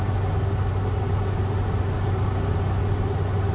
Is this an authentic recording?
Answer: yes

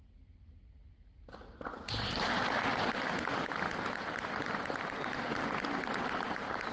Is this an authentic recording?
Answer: yes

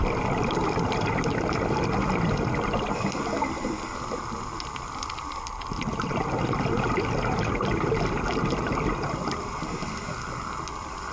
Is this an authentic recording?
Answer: yes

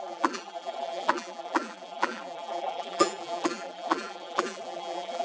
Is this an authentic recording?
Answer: no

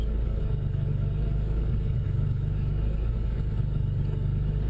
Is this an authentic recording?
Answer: no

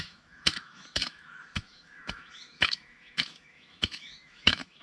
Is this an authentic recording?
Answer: no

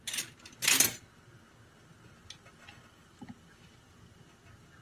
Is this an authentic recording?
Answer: yes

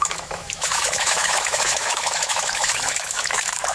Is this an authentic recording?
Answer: no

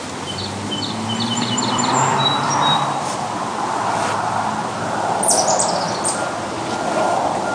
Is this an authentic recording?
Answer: yes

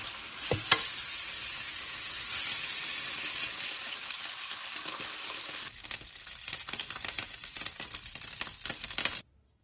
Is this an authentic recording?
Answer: yes